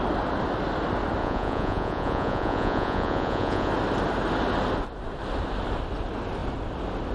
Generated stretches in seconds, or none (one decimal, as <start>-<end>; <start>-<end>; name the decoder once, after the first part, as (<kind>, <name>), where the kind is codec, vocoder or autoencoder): 1.2-3.7 (vocoder, Vocos)